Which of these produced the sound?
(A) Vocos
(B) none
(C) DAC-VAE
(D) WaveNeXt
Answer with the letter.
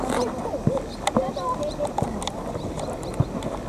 B